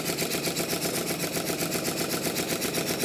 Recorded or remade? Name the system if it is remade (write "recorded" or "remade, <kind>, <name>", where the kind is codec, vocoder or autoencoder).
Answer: recorded